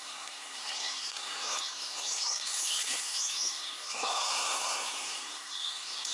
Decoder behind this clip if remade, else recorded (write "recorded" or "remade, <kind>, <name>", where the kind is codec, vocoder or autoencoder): remade, codec, SNAC